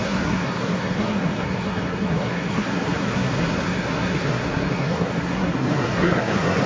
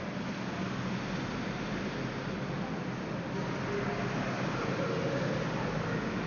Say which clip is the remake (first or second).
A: first